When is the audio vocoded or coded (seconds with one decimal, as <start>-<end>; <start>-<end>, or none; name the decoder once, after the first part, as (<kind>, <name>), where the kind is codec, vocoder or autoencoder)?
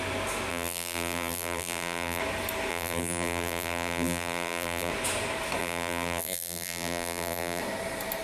0.5-2.2 (vocoder, BigVGAN v2); 2.7-4.9; 5.6-7.6